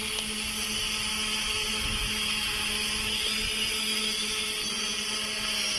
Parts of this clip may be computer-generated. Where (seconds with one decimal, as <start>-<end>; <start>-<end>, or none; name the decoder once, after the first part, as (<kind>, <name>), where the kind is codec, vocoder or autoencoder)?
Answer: 1.1-4.6 (autoencoder, DAC-VAE)

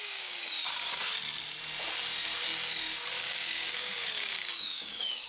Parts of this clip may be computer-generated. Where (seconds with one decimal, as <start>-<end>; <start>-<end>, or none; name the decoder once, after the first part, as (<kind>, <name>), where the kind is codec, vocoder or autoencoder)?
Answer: 0.0-1.1 (codec, DAC); 3.2-5.3